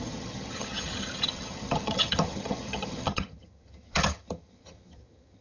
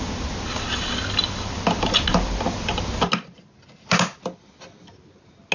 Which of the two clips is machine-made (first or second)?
first